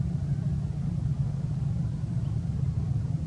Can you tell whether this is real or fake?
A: real